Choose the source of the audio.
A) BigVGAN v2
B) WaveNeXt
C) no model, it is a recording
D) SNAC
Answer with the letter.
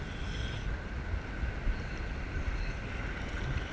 C